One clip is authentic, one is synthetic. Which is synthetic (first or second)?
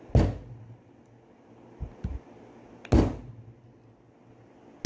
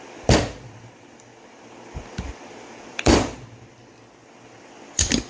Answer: second